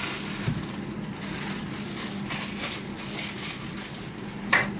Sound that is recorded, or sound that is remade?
recorded